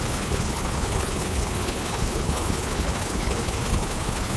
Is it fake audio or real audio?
fake